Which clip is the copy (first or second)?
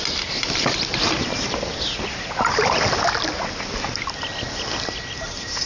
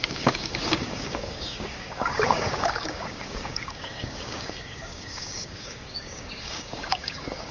second